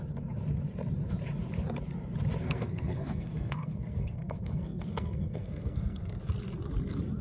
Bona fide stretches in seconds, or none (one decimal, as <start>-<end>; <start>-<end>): 0.0-2.4; 6.2-7.2